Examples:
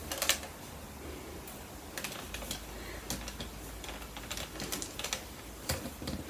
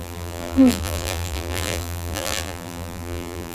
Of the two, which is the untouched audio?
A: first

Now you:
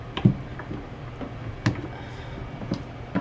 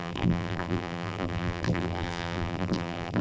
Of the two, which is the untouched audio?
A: first